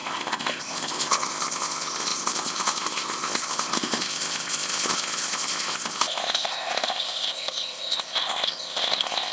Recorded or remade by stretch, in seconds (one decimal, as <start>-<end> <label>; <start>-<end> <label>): 0.0-9.3 remade